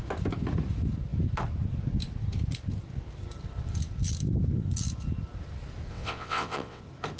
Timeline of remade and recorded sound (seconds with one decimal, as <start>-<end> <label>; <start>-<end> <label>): 0.0-5.9 recorded; 5.9-6.8 remade; 6.8-7.2 recorded